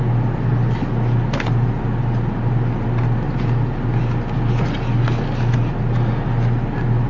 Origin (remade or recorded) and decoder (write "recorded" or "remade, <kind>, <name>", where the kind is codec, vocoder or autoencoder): recorded